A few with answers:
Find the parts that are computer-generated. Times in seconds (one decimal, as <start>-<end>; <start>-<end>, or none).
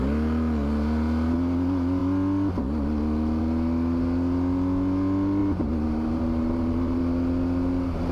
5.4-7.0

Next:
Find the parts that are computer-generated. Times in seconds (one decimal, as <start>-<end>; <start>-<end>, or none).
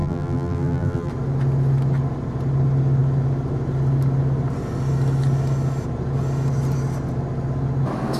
0.0-1.1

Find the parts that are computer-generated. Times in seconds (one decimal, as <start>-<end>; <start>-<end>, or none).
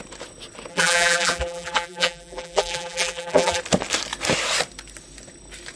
0.7-3.6